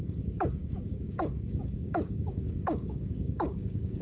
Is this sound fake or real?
fake